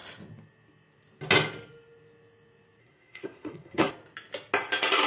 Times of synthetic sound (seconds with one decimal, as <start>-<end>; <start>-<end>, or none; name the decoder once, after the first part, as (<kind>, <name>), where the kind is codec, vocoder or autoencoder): 2.8-3.9 (codec, SNAC)